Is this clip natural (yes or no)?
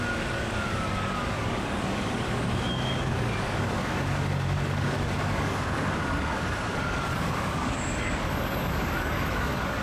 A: no